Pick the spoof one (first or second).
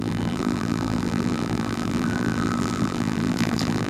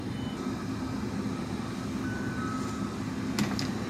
first